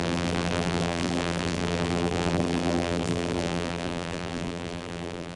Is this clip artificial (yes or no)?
yes